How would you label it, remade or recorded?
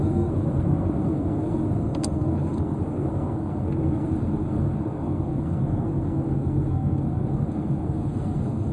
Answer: remade